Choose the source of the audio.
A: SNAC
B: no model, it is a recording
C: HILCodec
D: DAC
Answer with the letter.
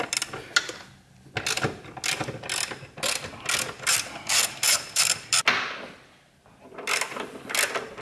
B